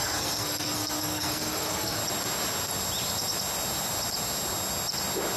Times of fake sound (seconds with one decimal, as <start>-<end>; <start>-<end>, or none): 0.0-2.0